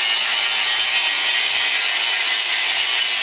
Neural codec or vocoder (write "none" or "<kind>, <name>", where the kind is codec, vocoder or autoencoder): none